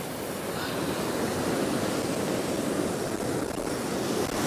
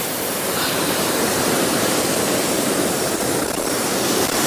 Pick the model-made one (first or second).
second